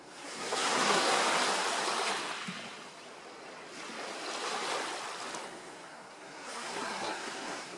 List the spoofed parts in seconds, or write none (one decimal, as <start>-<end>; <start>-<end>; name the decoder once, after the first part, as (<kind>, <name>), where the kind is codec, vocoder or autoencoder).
0.0-1.2 (codec, SNAC); 5.5-7.8